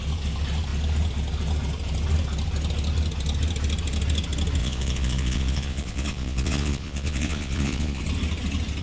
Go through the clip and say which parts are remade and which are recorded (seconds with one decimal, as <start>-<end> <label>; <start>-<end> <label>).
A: 0.0-4.6 recorded; 4.6-8.0 remade; 8.0-8.8 recorded